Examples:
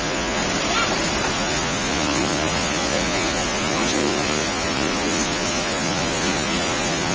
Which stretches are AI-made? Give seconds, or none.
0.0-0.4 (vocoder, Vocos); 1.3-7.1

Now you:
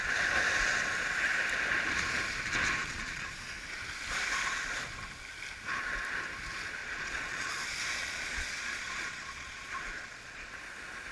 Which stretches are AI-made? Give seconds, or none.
2.8-3.3 (vocoder, Vocos); 6.8-7.5; 8.0-10.6

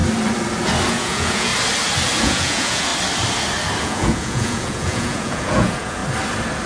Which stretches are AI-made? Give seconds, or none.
0.9-1.5 (vocoder, Vocos); 2.2-2.9; 3.8-6.0